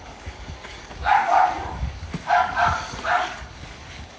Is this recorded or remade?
remade